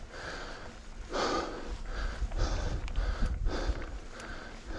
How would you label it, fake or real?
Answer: real